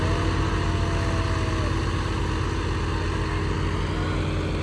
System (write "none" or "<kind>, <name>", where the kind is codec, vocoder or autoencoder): none